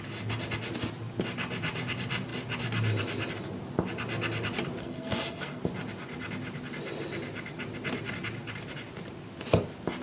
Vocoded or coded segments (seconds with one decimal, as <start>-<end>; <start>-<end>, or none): 4.8-5.6